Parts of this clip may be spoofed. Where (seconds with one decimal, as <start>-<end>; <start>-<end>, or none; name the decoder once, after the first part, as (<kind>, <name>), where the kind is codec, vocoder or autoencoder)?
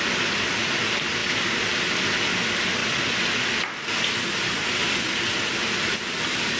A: none